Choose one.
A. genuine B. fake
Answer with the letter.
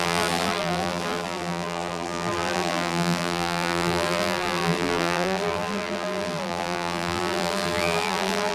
B